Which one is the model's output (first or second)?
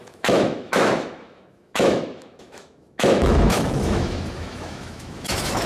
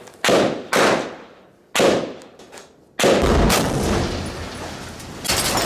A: first